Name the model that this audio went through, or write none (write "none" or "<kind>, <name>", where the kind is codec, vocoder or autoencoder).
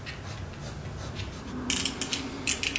none